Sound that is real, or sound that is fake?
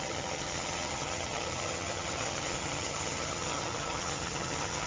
fake